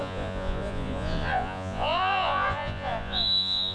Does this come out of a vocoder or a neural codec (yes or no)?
yes